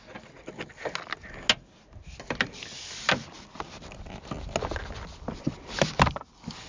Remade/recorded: recorded